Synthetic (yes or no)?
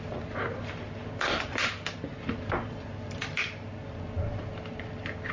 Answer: no